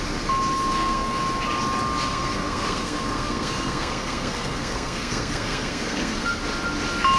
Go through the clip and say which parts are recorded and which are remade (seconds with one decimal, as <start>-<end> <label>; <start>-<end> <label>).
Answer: 0.0-0.7 recorded; 0.7-1.2 remade; 1.2-2.1 recorded; 2.1-6.4 remade; 6.4-7.2 recorded

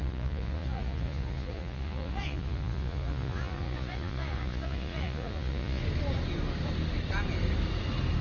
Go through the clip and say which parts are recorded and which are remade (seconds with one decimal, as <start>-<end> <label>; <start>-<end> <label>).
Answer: 0.0-5.8 remade; 5.8-8.2 recorded

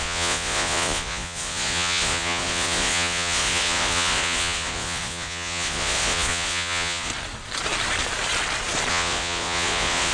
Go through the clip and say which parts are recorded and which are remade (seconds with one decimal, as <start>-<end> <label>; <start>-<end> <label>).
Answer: 0.0-7.1 remade; 7.1-8.9 recorded; 8.9-10.1 remade